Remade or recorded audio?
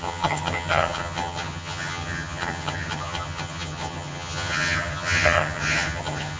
remade